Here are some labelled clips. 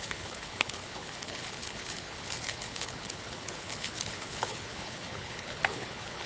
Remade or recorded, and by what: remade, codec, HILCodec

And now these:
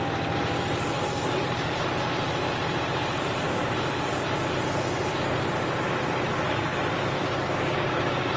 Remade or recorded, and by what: remade, vocoder, BigVGAN v2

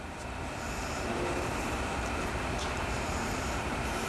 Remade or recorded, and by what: remade, vocoder, BigVGAN v2